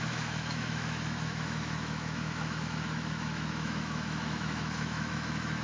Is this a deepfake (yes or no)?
yes